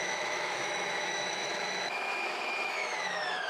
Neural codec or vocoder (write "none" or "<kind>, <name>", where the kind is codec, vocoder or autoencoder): autoencoder, DAC-VAE